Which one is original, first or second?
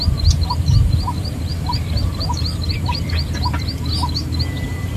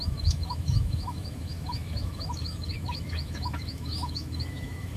first